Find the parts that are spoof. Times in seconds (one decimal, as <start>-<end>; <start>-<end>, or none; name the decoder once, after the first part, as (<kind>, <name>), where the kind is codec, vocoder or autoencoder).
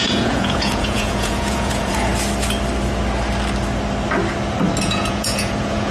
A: 0.0-2.1 (vocoder, Vocos); 4.8-5.9